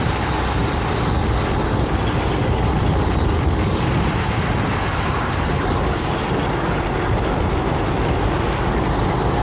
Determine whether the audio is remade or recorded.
recorded